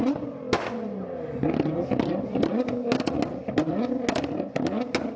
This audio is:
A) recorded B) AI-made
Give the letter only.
A